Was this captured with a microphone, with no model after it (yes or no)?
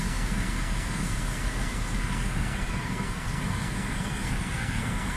no